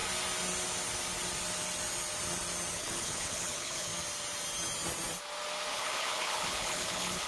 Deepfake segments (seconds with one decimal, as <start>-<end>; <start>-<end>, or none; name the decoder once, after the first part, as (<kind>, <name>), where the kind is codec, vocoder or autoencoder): 2.7-3.9 (codec, HILCodec); 5.7-7.3